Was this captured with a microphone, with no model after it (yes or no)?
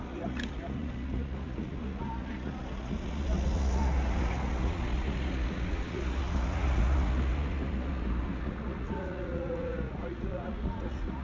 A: no